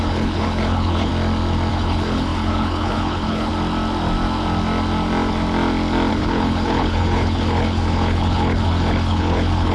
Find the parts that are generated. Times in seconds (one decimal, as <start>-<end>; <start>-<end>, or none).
0.0-1.1; 1.7-3.5; 6.1-9.7